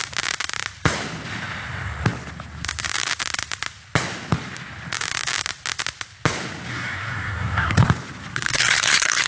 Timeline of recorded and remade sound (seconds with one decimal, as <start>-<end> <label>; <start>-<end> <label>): 0.0-6.7 recorded; 6.7-7.9 remade; 7.9-8.3 recorded; 8.3-9.3 remade